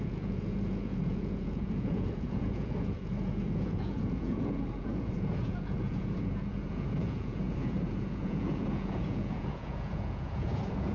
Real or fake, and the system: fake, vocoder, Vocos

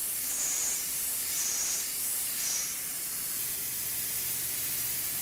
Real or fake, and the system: fake, vocoder, BigVGAN v2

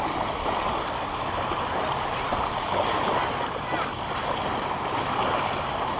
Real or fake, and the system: real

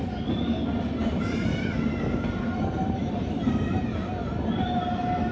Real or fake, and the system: real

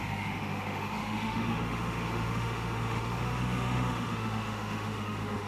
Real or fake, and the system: fake, autoencoder, DAC-VAE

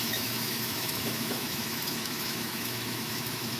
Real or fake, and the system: fake, autoencoder, DAC-VAE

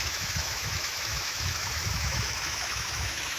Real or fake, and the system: fake, autoencoder, DAC-VAE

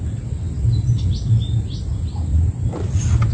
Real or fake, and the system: real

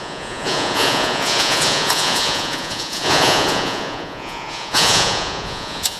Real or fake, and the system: fake, vocoder, Vocos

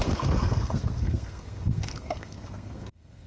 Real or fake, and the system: fake, codec, SNAC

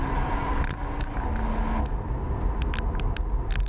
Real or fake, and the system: real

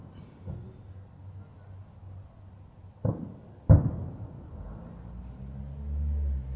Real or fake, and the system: real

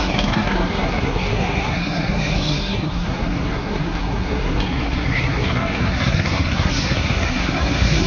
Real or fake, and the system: fake, codec, SNAC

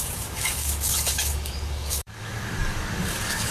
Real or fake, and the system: fake, codec, DAC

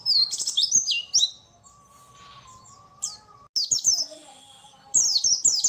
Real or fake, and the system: real